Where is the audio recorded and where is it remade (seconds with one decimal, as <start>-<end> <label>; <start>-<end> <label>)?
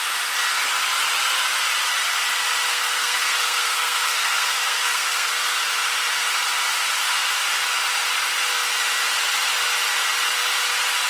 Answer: 0.0-2.7 recorded; 2.7-5.6 remade; 5.6-11.1 recorded